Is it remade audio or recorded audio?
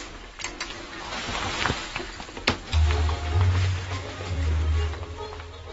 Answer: recorded